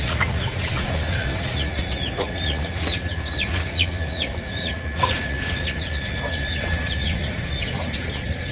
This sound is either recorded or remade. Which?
remade